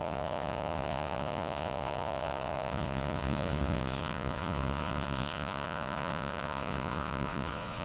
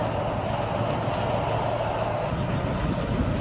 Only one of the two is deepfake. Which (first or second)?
first